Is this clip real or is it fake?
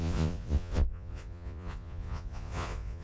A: fake